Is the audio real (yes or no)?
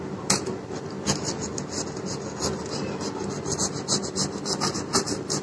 yes